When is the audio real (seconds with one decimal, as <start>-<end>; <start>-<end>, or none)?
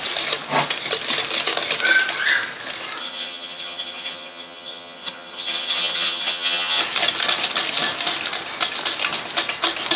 0.0-3.0; 6.8-10.0